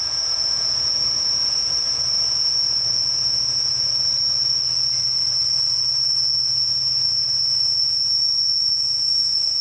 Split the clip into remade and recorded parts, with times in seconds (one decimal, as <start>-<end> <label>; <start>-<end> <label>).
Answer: 0.0-4.1 remade; 4.1-6.4 recorded; 6.4-9.6 remade